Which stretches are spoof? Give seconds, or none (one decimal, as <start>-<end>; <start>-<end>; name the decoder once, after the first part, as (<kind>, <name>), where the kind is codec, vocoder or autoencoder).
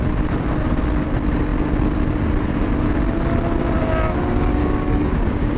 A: 4.6-5.6 (codec, DAC)